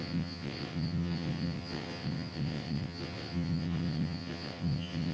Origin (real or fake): fake